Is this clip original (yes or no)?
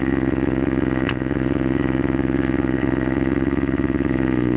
no